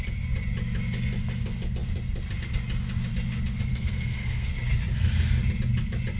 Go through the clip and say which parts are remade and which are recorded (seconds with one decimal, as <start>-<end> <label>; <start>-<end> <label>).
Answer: 0.0-3.7 recorded; 3.7-4.5 remade; 4.5-6.2 recorded